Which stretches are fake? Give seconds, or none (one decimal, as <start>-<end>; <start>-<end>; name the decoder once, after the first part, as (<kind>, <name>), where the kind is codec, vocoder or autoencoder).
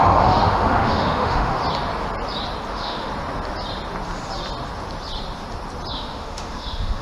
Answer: 0.0-1.6 (autoencoder, DAC-VAE); 2.7-3.1; 5.9-7.0